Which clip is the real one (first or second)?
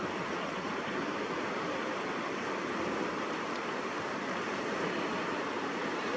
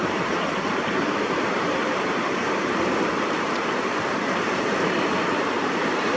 first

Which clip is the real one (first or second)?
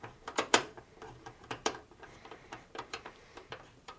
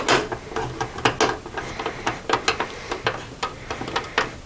second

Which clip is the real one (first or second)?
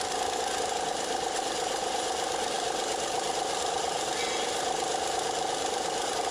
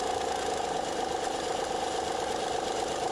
second